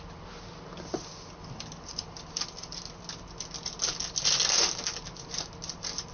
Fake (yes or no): no